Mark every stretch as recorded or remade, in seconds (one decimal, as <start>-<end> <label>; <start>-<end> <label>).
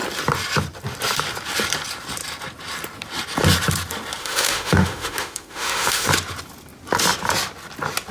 0.0-4.2 recorded; 4.2-6.1 remade; 6.1-8.1 recorded